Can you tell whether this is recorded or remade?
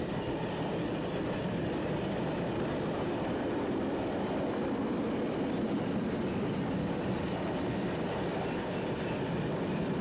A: recorded